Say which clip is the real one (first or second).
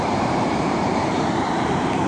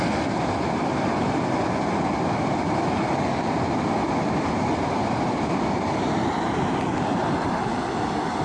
second